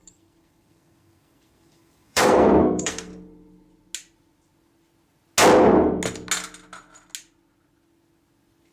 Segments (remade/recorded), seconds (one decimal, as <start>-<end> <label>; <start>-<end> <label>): 0.0-3.1 remade; 3.1-8.7 recorded